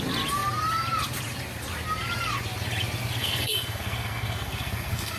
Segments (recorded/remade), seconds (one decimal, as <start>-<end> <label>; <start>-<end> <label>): 0.0-3.2 recorded; 3.2-5.2 remade